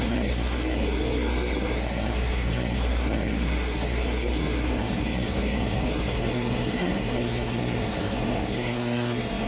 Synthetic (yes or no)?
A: yes